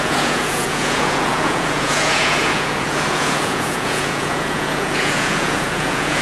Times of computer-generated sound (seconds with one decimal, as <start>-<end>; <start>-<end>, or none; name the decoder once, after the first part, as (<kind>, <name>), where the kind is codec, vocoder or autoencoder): 0.0-6.2 (vocoder, Vocos)